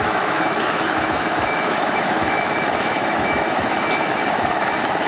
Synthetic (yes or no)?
yes